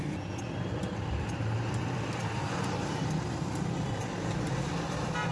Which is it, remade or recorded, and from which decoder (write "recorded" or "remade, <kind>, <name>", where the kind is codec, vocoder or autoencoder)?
remade, vocoder, BigVGAN v2